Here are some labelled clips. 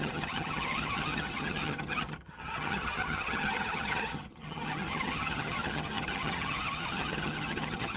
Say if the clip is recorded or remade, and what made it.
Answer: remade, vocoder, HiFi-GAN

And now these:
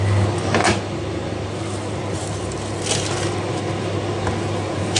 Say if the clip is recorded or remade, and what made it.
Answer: recorded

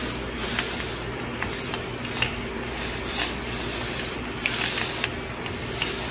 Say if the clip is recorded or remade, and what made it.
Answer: recorded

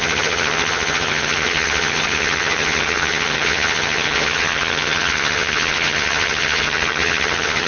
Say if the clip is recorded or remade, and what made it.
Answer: remade, vocoder, HiFi-GAN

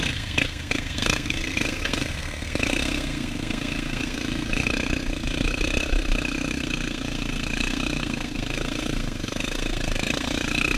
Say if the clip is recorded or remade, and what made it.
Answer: remade, codec, SNAC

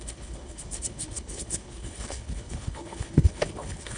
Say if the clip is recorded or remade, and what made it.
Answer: remade, codec, HILCodec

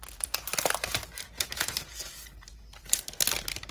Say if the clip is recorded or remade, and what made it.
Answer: recorded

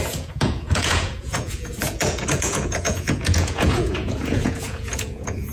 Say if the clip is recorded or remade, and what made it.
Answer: remade, vocoder, Vocos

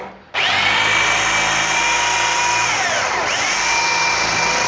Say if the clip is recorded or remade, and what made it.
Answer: recorded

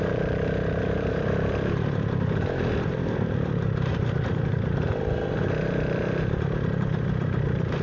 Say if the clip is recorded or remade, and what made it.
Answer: remade, vocoder, BigVGAN v2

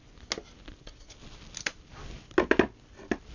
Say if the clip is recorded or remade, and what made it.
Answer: recorded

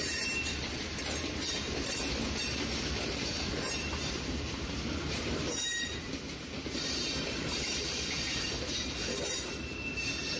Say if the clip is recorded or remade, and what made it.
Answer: remade, vocoder, BigVGAN v2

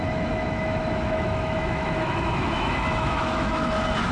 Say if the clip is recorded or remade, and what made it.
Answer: remade, autoencoder, DAC-VAE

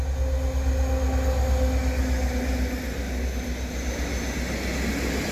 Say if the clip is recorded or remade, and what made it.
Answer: recorded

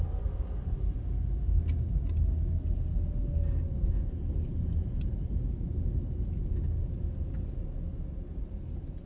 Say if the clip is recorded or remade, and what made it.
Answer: recorded